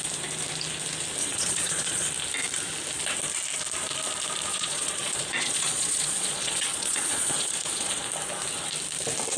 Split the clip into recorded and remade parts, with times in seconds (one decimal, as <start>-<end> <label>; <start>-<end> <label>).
0.0-1.2 recorded; 1.2-2.1 remade; 2.1-4.5 recorded; 4.5-8.0 remade; 8.0-9.4 recorded